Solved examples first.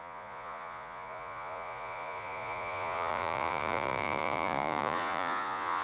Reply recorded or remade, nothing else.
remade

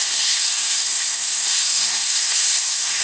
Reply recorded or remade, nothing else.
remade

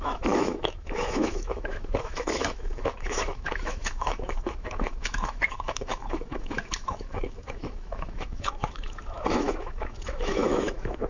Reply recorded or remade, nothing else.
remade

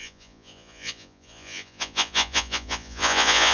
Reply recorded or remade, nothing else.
remade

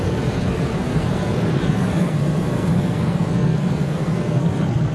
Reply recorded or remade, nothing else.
remade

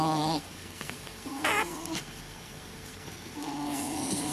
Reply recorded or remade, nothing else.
remade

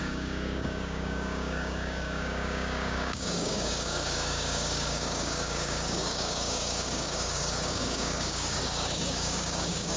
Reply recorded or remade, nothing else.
remade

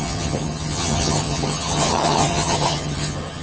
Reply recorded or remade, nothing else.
remade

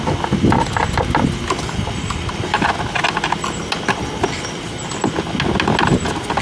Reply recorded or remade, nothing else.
recorded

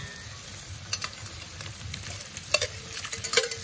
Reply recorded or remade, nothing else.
recorded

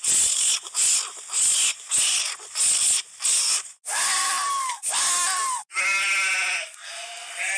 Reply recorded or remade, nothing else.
recorded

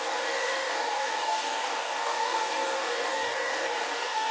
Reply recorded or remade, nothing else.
remade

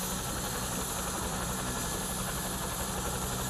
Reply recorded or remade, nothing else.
recorded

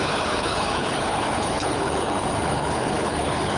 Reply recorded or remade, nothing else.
remade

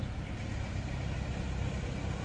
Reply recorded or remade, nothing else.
recorded